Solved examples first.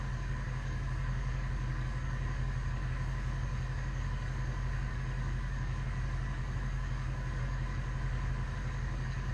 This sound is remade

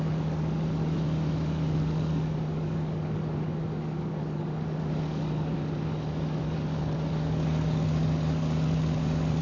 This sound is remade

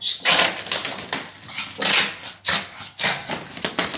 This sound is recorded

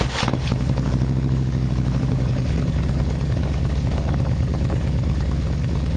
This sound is remade